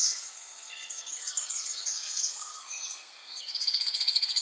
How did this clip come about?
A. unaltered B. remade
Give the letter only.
B